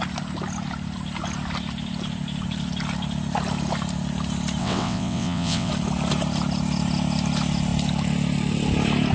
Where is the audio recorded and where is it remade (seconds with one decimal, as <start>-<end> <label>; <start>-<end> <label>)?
0.0-4.6 recorded; 4.6-5.7 remade; 5.7-9.1 recorded